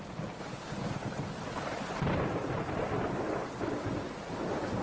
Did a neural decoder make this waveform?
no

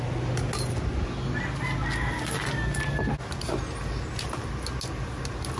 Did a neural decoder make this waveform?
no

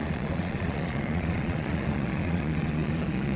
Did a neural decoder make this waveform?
yes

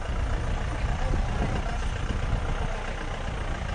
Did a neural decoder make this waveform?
no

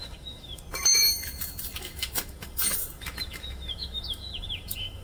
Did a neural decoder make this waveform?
yes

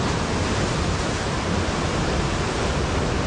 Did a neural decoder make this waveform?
no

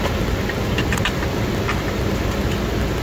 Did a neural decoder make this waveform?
no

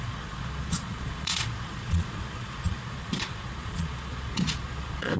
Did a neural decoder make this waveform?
yes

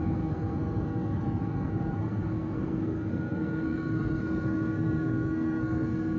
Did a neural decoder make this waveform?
yes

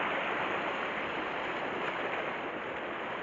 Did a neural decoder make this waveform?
no